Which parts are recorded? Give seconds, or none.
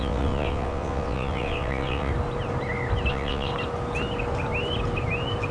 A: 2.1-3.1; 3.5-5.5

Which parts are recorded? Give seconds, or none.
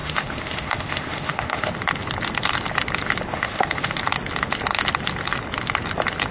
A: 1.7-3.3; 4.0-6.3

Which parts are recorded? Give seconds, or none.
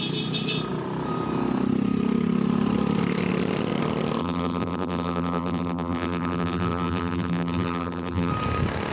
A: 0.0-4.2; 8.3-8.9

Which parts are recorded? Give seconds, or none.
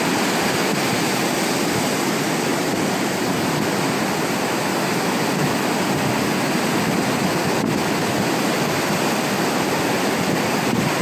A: 0.0-2.5; 4.5-11.0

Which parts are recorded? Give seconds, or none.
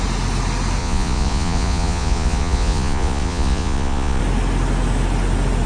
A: 0.0-0.8; 4.2-5.7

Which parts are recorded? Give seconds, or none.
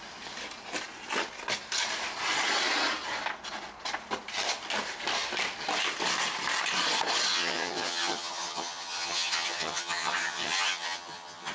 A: 0.0-7.3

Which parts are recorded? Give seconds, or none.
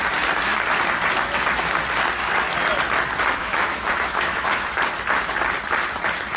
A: 0.0-3.4; 4.8-6.4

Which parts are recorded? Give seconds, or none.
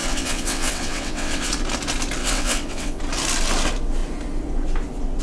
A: 1.5-2.2; 3.0-5.2